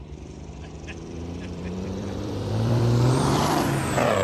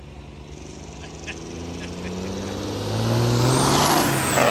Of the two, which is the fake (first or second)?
first